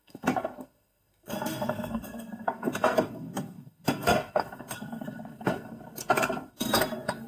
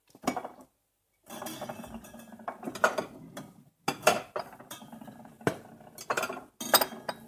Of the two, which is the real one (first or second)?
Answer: second